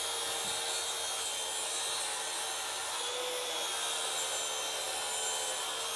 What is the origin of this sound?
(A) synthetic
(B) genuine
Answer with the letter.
B